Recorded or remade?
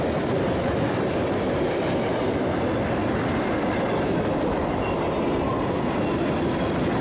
recorded